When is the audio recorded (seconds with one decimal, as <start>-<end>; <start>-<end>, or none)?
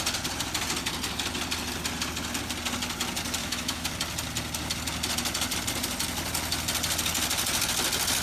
0.0-3.4; 3.9-8.2